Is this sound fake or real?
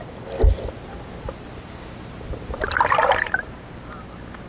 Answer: real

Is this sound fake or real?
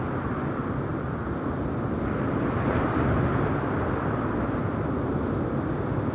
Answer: real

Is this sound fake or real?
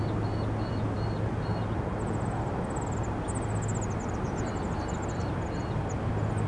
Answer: real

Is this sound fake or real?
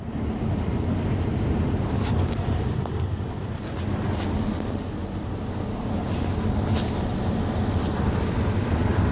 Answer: real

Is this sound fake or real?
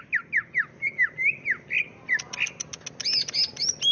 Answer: real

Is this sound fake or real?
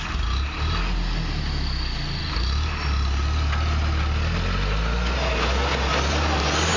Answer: real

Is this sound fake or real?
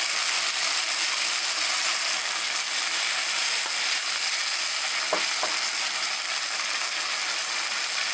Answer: real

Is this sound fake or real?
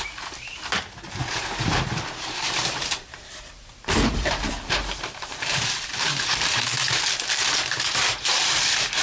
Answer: fake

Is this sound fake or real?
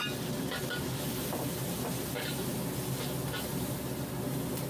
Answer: real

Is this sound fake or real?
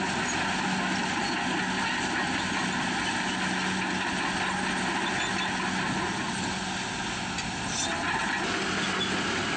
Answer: real